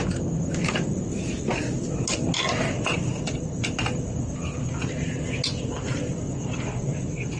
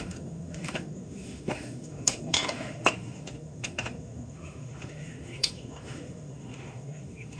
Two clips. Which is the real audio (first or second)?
first